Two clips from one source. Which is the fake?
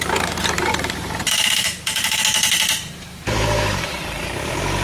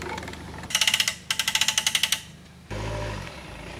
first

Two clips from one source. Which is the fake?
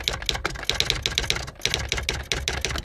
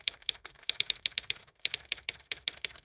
second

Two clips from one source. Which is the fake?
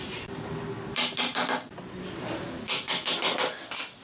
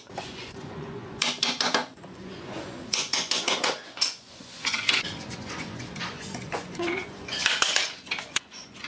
second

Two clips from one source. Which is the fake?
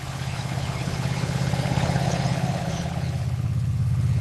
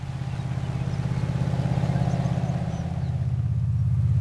first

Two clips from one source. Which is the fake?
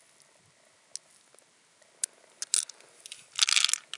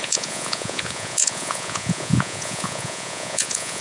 second